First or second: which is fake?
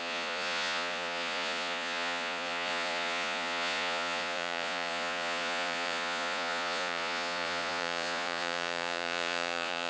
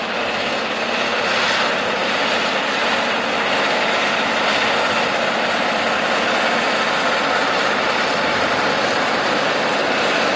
first